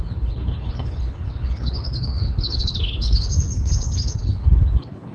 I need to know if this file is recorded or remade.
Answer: remade